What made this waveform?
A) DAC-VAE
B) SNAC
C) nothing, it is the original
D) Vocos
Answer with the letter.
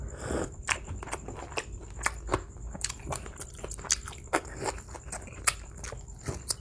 C